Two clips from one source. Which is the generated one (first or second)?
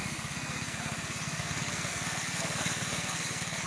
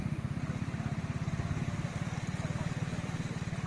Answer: first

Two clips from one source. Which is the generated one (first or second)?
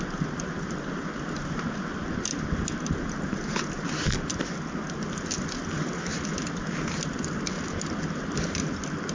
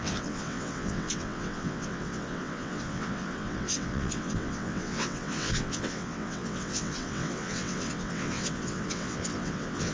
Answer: second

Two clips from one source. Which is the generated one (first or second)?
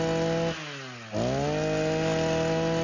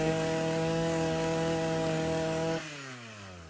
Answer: second